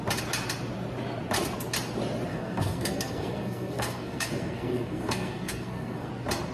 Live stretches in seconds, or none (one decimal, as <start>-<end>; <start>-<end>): 0.0-2.3; 6.1-6.5